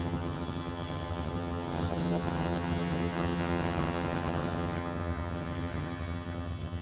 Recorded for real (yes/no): no